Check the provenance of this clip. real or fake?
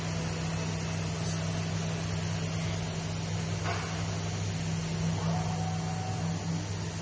real